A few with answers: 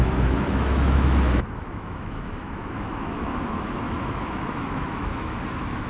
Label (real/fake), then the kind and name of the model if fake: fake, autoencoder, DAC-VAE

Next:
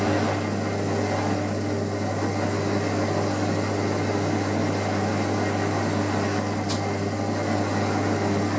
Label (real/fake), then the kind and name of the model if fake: real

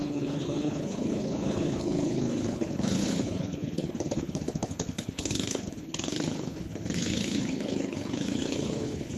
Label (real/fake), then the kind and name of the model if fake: fake, codec, HILCodec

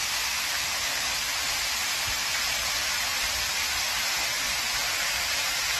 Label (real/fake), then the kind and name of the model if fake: fake, vocoder, BigVGAN v2